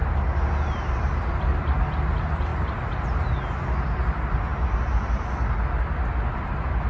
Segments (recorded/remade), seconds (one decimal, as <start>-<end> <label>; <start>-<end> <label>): 0.0-6.9 recorded